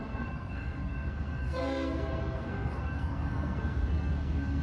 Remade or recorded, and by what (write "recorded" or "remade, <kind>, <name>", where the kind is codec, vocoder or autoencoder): remade, codec, SNAC